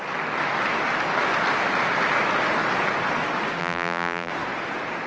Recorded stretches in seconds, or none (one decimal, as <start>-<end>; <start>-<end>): 0.0-3.6; 4.3-5.1